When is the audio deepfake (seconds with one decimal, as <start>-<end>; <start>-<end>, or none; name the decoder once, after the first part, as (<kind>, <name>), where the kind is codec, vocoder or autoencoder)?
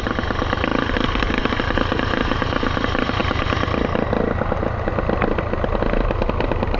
0.0-3.2 (vocoder, BigVGAN v2); 6.1-6.8